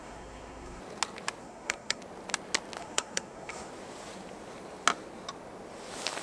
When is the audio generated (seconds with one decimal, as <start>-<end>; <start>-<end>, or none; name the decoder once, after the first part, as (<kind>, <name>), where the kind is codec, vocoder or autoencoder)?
0.0-0.8 (codec, SNAC); 1.4-2.0; 2.8-3.7